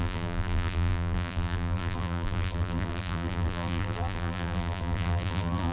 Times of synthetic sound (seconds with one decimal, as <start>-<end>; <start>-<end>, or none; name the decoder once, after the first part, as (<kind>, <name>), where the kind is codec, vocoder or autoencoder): 0.0-5.7 (vocoder, BigVGAN v2)